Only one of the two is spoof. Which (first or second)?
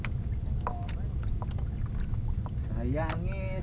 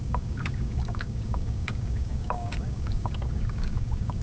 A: second